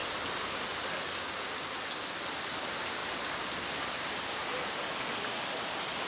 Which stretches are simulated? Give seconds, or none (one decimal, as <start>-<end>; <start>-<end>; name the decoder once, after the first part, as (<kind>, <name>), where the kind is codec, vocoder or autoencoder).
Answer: none

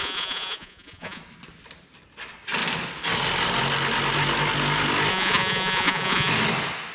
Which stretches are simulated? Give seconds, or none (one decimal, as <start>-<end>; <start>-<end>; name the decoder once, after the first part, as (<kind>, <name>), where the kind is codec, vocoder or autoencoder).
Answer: 0.0-1.2 (vocoder, Vocos); 5.1-6.3

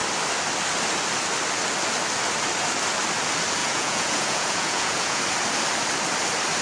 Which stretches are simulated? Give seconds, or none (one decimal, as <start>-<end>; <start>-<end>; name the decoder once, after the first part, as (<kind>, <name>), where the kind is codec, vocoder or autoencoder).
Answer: 3.6-5.2 (vocoder, Vocos)

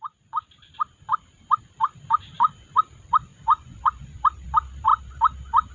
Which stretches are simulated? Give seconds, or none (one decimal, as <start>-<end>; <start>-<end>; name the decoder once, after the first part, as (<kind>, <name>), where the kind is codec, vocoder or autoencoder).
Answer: 3.3-4.2 (vocoder, Vocos)

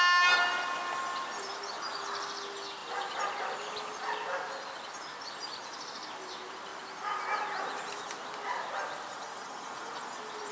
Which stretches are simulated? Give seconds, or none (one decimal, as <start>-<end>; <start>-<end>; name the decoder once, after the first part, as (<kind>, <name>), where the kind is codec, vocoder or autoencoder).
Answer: 9.1-9.9 (vocoder, Vocos)

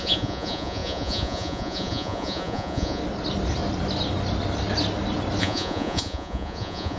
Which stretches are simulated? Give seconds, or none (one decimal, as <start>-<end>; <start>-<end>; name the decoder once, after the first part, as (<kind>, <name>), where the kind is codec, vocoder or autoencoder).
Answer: 0.0-3.0 (vocoder, Vocos); 5.4-7.0

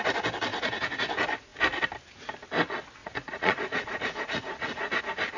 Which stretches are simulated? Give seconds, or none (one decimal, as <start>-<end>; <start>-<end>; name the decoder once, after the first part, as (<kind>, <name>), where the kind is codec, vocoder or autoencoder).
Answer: 0.5-1.1 (vocoder, Vocos); 3.0-5.0

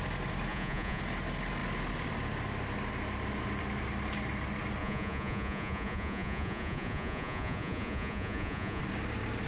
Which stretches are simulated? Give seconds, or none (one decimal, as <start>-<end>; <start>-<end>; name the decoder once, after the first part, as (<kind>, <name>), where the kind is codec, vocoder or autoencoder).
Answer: 0.5-1.0 (vocoder, Vocos); 4.8-8.8